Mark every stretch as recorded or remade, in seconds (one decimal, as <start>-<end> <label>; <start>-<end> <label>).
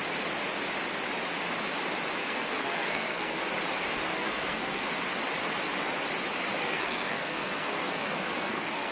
0.0-2.2 recorded; 2.2-3.4 remade; 3.4-4.1 recorded; 4.1-4.9 remade; 4.9-6.6 recorded; 6.6-8.9 remade